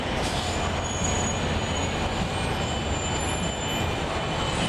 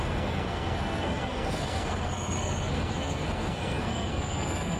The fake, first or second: second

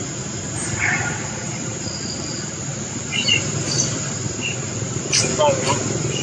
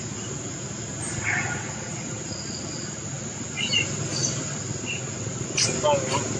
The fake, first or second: first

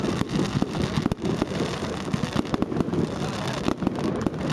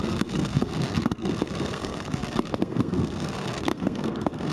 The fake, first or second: second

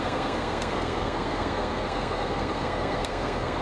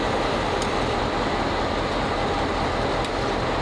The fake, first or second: first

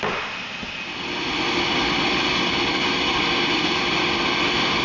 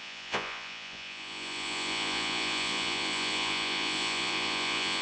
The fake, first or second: second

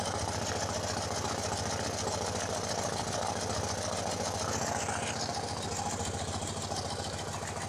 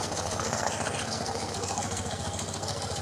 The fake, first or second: second